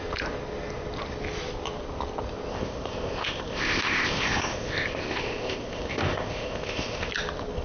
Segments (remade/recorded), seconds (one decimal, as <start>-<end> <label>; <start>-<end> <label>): 0.0-2.5 recorded; 2.5-7.1 remade; 7.1-7.6 recorded